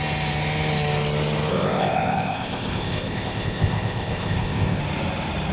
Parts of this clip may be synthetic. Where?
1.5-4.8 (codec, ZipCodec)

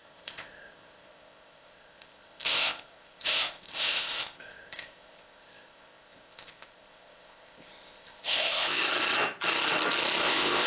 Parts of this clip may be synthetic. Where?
0.0-8.8 (codec, ZipCodec); 10.2-10.7

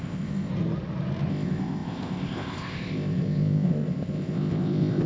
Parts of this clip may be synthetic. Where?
0.0-0.5 (codec, ZipCodec); 1.3-5.1

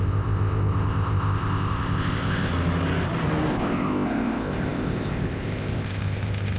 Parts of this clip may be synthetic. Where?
0.0-2.5 (codec, ZipCodec); 3.5-6.6

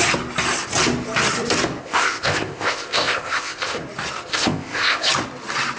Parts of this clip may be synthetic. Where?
1.8-3.8 (codec, ZipCodec); 4.3-5.1

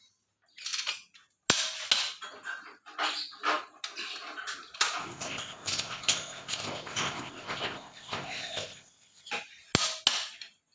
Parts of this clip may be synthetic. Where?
5.0-9.3 (codec, ZipCodec)

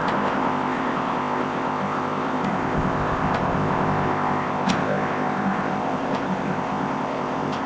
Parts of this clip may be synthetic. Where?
0.0-7.7 (codec, ZipCodec)

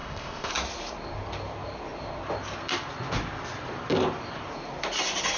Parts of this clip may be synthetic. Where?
0.0-0.5 (codec, ZipCodec)